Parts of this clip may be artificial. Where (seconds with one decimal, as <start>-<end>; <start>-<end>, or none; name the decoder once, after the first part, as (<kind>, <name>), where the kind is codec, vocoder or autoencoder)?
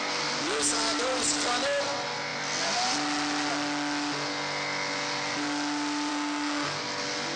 6.1-6.8 (codec, DAC)